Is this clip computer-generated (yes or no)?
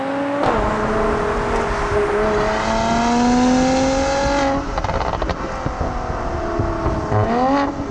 no